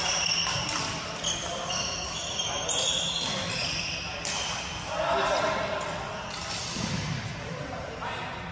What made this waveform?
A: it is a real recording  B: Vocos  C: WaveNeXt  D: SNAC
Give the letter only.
A